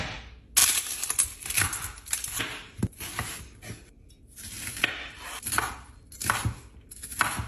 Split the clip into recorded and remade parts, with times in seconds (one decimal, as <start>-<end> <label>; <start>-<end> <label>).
0.0-0.6 recorded; 0.6-2.4 remade; 2.4-3.8 recorded; 3.8-4.8 remade; 4.8-7.5 recorded